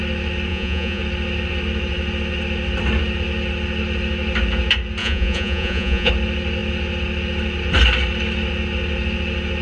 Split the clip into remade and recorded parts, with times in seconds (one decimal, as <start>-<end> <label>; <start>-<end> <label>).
0.0-0.5 recorded; 0.5-1.0 remade; 1.0-5.0 recorded; 5.0-6.1 remade; 6.1-9.6 recorded